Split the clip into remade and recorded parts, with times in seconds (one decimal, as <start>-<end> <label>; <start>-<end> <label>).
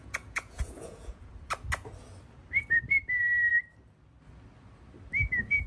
0.0-1.3 remade; 1.3-5.7 recorded